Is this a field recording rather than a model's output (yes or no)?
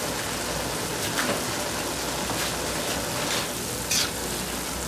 yes